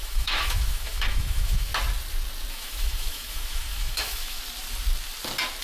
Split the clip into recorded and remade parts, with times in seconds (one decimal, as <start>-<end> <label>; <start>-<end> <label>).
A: 0.0-1.7 remade; 1.7-2.5 recorded; 2.5-4.4 remade; 4.4-5.6 recorded